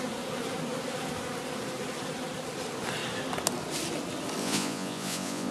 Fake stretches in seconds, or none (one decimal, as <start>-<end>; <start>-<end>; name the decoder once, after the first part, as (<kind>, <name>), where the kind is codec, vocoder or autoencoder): 4.4-5.5 (vocoder, Vocos)